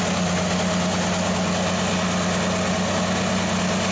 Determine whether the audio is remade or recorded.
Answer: recorded